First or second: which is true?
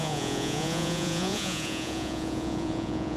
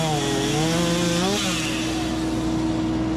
second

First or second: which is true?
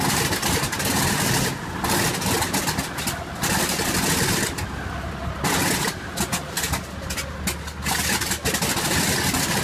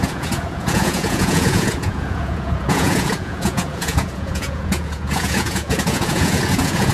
first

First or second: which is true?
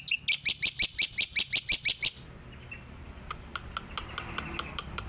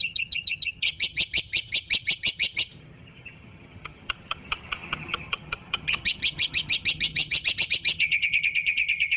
first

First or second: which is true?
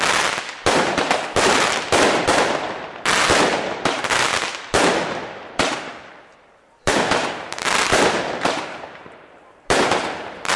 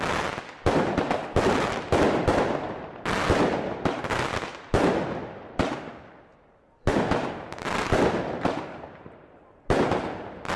second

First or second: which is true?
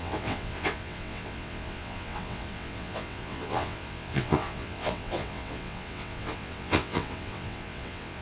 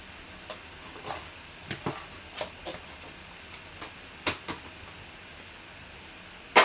second